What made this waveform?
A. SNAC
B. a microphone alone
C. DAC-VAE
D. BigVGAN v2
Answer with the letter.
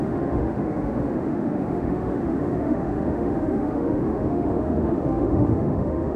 C